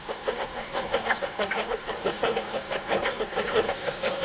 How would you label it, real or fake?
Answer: fake